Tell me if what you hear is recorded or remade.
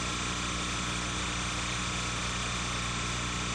recorded